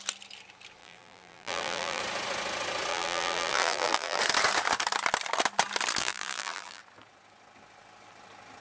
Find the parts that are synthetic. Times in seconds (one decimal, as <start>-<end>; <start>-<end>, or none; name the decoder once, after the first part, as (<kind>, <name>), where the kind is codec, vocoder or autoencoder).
0.8-2.0 (vocoder, BigVGAN v2); 2.9-4.2; 6.0-6.8